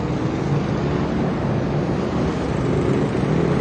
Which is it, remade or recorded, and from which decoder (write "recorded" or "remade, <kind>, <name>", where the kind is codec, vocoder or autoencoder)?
recorded